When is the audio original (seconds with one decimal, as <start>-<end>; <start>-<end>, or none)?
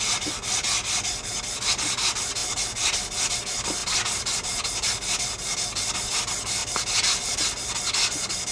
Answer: 0.0-8.5